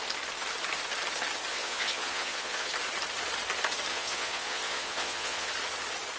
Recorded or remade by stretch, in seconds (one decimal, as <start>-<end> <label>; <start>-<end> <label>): 0.0-1.5 recorded; 1.5-2.7 remade; 2.7-3.9 recorded; 3.9-5.5 remade; 5.5-6.2 recorded